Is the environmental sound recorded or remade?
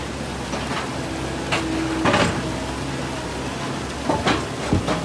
recorded